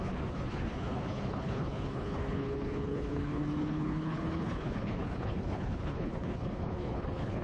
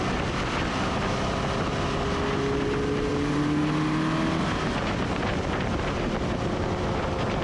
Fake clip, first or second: first